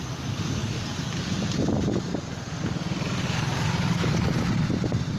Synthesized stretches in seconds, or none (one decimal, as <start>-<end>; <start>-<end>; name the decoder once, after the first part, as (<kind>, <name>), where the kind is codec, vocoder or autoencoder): 0.6-1.3 (codec, DAC); 3.2-4.3